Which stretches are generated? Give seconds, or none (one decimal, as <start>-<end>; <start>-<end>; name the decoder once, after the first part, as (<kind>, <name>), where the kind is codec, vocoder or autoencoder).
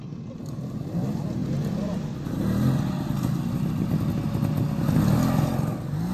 none